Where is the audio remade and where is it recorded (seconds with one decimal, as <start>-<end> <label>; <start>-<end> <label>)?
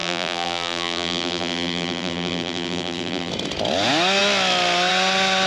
0.0-3.3 remade; 3.3-5.5 recorded